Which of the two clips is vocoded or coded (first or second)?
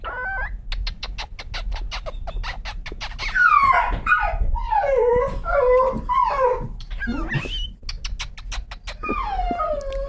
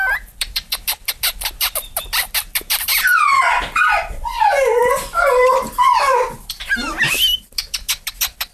second